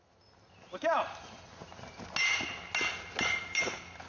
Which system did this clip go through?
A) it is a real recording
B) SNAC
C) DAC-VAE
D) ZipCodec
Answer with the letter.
A